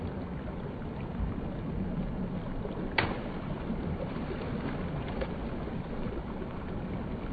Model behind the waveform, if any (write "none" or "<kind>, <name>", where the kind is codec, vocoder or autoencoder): none